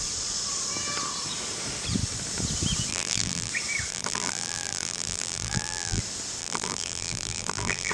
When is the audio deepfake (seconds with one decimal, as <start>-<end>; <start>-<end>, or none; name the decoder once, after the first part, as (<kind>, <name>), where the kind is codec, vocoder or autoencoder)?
2.9-3.5 (vocoder, BigVGAN v2); 3.9-6.0; 6.4-7.9

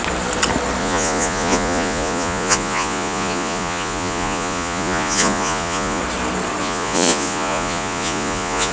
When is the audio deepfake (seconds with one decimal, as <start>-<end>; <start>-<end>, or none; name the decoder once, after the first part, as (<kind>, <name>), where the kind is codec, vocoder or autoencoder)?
0.8-6.0 (vocoder, Vocos); 6.6-8.7